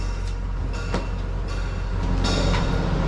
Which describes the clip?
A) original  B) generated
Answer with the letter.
A